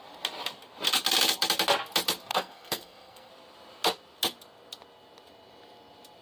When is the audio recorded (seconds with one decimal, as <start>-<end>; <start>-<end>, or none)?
0.0-2.3; 3.3-6.2